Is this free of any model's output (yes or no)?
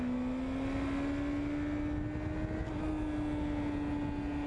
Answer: yes